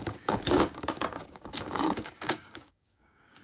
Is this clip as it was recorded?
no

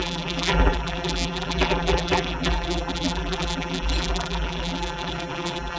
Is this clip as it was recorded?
no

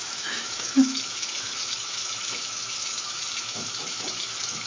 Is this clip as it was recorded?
no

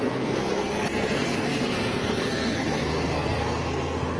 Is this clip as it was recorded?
no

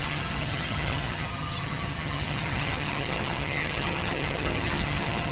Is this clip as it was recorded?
no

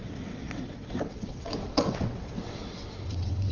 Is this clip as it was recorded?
no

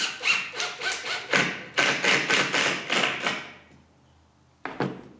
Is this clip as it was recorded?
yes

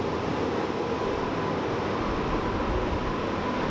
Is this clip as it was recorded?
yes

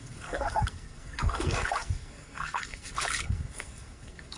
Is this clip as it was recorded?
no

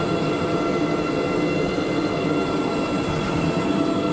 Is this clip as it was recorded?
yes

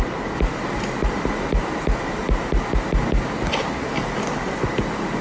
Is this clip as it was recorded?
yes